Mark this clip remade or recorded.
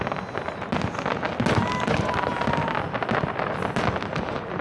recorded